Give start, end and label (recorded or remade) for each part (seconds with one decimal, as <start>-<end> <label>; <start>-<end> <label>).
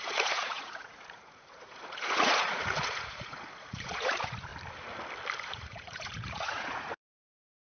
0.0-4.5 remade; 4.5-5.4 recorded; 5.4-7.6 remade